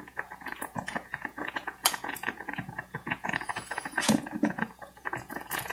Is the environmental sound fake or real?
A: fake